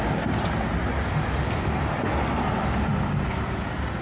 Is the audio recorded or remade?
recorded